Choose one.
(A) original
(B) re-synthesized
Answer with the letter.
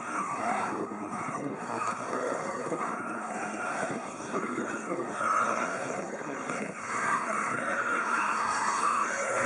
B